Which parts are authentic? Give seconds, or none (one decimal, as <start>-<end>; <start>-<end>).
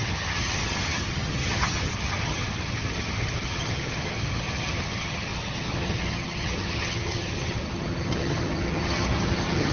none